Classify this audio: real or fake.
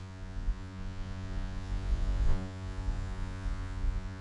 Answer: fake